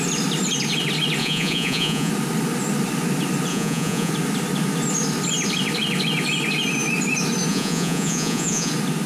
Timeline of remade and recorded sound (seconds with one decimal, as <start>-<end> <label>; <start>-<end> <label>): 0.0-1.2 recorded; 1.2-2.1 remade; 2.1-3.5 recorded; 3.5-4.1 remade; 4.1-7.5 recorded; 7.5-8.7 remade; 8.7-9.1 recorded